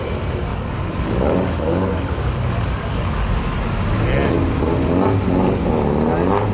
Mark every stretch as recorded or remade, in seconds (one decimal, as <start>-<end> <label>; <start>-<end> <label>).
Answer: 0.0-0.5 recorded; 0.5-3.3 remade; 3.3-6.5 recorded